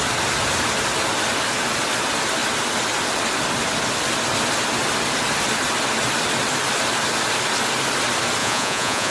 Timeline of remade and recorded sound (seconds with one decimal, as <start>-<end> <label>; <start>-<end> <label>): 0.0-8.4 recorded; 8.4-9.1 remade